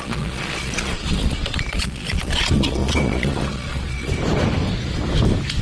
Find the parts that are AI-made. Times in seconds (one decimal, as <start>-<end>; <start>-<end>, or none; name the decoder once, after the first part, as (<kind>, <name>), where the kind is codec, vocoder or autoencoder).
0.0-4.1 (vocoder, Vocos)